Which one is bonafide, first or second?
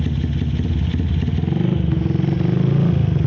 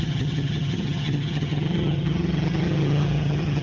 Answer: first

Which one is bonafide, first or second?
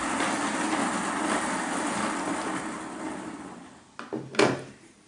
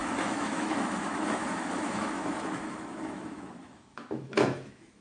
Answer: first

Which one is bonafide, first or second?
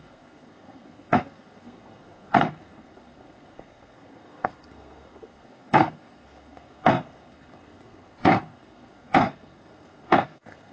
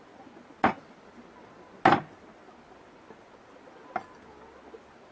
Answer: second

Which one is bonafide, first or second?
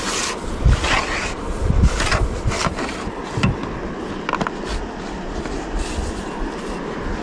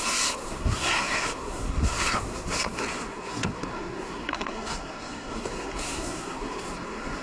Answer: first